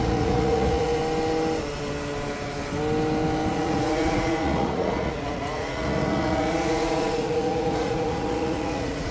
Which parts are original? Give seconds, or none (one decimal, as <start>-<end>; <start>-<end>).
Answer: 1.0-3.5